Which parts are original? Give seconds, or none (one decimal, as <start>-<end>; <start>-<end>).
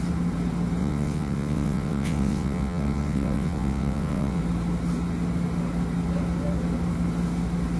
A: 0.0-0.8; 4.4-7.8